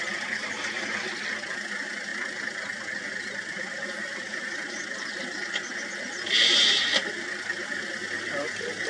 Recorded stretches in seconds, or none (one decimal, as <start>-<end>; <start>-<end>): 0.0-8.9